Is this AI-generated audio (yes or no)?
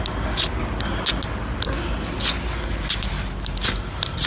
no